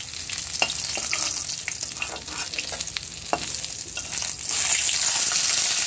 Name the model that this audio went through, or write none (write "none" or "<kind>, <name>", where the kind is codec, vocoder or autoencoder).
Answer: none